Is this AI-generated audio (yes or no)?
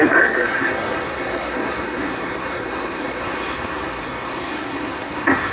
yes